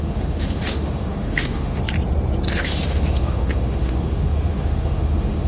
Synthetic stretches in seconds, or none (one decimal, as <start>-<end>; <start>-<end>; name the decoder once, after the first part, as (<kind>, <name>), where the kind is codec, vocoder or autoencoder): 0.0-1.8 (autoencoder, DAC-VAE); 2.5-5.5